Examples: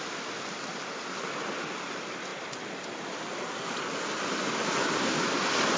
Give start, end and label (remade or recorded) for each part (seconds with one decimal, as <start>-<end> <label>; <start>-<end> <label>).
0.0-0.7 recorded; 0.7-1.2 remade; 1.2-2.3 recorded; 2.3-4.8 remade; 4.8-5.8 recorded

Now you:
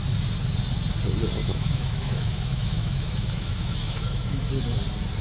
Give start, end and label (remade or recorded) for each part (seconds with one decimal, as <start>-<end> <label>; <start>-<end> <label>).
0.0-1.4 recorded; 1.4-4.5 remade; 4.5-5.2 recorded

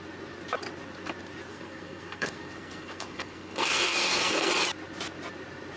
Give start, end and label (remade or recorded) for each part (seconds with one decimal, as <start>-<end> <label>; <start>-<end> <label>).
0.0-1.5 recorded; 1.5-4.5 remade; 4.5-5.8 recorded

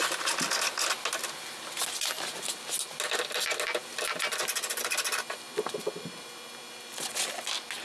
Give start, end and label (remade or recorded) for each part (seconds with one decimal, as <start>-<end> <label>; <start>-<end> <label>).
0.0-7.8 recorded

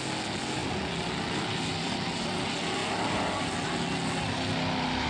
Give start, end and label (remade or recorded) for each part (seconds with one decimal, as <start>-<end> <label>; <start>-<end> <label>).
0.0-5.1 recorded